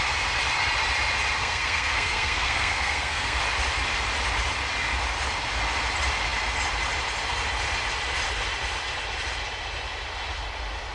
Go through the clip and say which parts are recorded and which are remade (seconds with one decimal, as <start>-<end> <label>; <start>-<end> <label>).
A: 0.0-1.4 recorded; 1.4-3.4 remade; 3.4-10.9 recorded